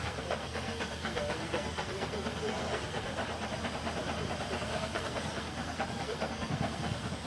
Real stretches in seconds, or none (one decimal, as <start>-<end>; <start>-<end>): 3.2-4.6